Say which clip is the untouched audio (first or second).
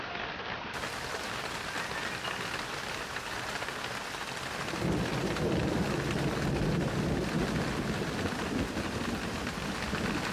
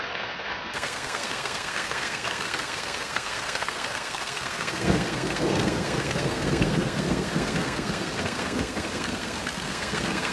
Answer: first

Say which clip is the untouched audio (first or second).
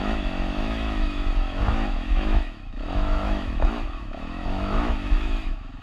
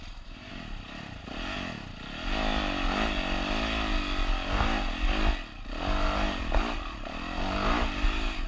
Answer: second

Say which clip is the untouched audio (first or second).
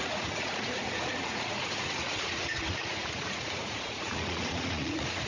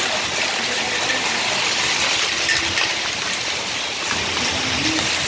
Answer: second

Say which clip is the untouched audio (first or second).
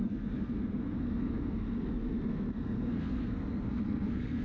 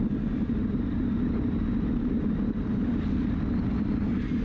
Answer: second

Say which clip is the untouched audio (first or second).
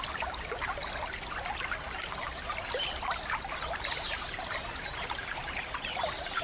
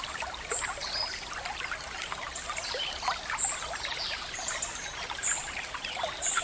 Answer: first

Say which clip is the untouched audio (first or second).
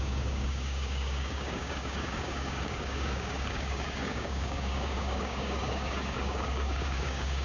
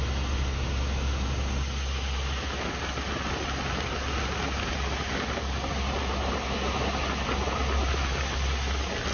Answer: second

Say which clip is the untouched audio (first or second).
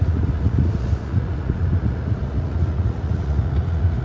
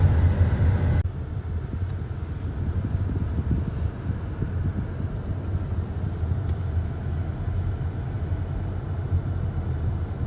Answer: second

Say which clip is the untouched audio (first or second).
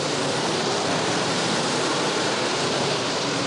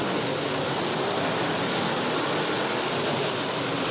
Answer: second